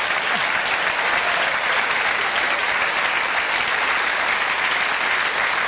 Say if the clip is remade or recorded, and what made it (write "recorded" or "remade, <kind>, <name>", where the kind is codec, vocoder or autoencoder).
recorded